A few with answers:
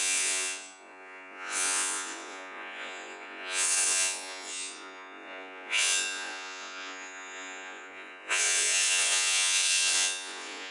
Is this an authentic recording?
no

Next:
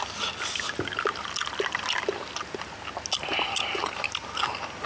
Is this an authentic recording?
yes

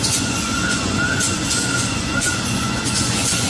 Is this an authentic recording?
no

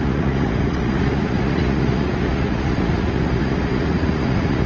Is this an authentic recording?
no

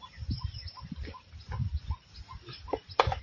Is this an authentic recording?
yes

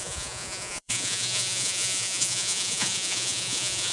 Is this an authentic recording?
no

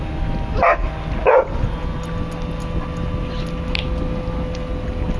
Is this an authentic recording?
yes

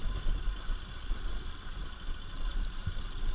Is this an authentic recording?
yes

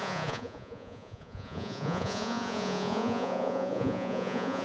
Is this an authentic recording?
no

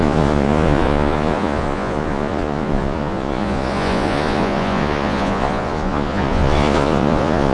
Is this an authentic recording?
no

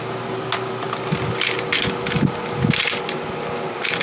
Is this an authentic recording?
yes